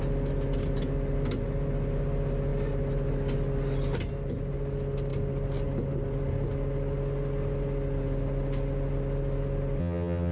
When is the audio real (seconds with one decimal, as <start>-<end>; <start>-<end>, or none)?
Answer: 0.0-9.8